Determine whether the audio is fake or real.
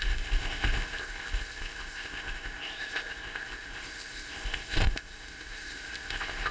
fake